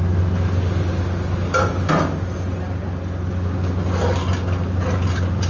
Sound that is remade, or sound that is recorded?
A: recorded